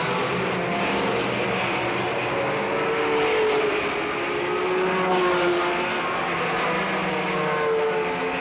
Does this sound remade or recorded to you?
recorded